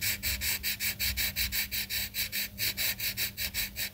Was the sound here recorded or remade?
recorded